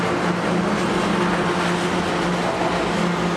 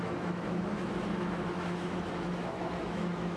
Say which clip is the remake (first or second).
second